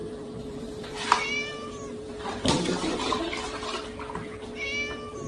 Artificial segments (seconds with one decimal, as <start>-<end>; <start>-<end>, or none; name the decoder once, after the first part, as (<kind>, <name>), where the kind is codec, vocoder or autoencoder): 0.0-3.2 (vocoder, BigVGAN v2)